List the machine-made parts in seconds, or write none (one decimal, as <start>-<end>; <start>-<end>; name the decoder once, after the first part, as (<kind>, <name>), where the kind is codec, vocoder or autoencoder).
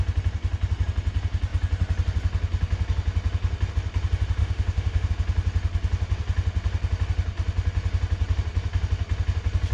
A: 4.4-5.1 (autoencoder, DAC-VAE)